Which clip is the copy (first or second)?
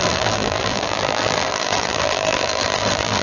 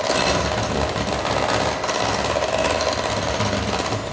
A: first